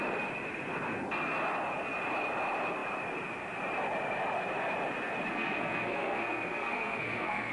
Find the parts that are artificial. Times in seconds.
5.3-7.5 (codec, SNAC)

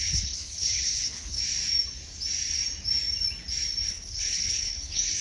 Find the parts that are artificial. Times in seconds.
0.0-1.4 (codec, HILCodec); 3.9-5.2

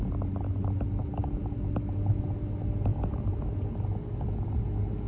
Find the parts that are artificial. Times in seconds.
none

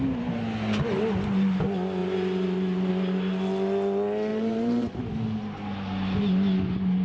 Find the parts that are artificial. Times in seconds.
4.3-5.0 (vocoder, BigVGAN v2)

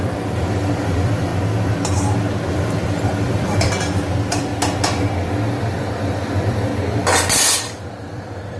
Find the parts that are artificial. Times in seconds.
0.0-1.3 (vocoder, BigVGAN v2); 2.5-4.5; 5.5-6.7; 7.6-8.6

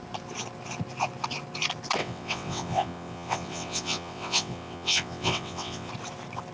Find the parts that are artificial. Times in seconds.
2.0-5.9 (vocoder, WaveNeXt)

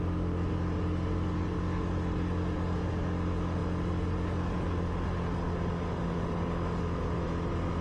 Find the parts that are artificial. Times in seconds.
none